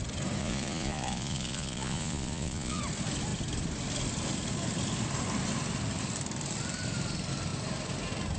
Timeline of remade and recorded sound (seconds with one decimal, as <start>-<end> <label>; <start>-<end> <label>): 0.0-0.4 recorded; 0.4-2.8 remade; 2.8-8.4 recorded